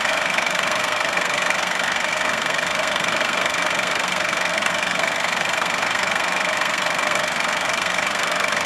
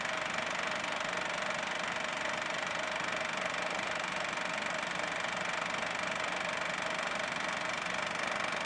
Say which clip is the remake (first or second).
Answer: first